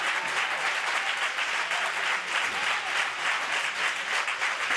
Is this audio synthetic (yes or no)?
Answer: no